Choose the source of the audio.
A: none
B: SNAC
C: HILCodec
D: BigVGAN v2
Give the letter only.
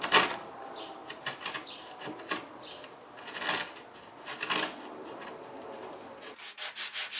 A